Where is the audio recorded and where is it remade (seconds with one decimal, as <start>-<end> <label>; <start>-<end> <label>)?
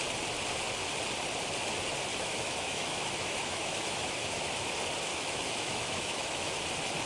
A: 0.0-2.1 recorded; 2.1-4.4 remade; 4.4-5.1 recorded; 5.1-6.5 remade; 6.5-7.1 recorded